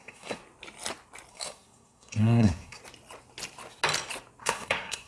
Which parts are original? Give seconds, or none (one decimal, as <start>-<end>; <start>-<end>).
0.4-1.3; 2.8-4.4